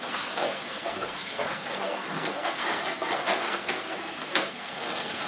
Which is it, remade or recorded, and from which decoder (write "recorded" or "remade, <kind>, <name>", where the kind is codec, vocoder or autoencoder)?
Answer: remade, codec, SNAC